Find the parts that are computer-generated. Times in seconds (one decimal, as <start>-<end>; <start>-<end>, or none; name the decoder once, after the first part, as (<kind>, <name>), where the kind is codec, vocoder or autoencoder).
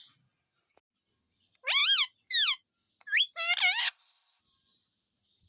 3.8-4.4 (codec, ZipCodec)